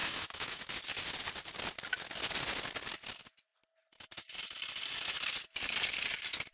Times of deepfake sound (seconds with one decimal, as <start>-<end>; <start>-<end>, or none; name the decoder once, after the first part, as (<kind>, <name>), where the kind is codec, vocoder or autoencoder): 0.0-0.6 (autoencoder, DAC-VAE)